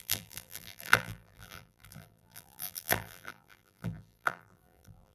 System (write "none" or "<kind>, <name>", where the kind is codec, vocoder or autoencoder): vocoder, BigVGAN v2